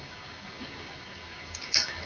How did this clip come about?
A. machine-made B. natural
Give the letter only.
A